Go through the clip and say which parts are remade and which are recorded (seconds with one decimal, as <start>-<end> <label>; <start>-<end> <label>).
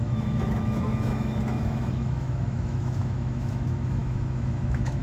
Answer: 0.0-5.0 remade